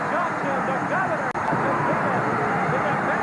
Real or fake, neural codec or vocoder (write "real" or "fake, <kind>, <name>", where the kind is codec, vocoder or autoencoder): real